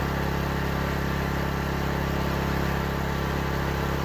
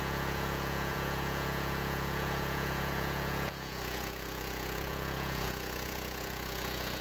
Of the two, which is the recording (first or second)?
first